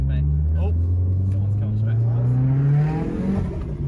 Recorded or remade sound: recorded